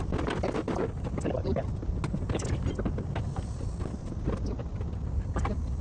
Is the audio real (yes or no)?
yes